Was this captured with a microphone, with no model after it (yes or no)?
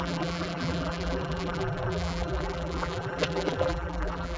no